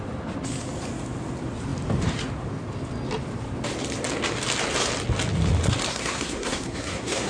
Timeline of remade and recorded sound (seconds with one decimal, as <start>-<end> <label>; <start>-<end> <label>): 0.0-5.9 recorded; 5.9-7.3 remade